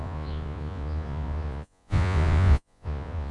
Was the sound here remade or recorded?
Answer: remade